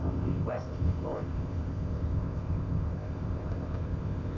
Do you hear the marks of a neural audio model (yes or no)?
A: yes